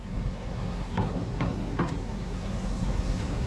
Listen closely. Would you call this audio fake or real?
fake